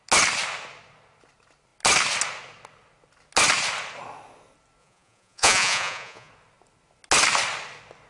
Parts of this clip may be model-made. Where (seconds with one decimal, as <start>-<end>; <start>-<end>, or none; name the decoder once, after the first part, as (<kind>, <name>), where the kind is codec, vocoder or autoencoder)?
4.8-6.3 (vocoder, Vocos)